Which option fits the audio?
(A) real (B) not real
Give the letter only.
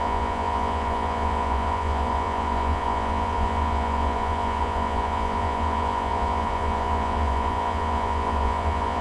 B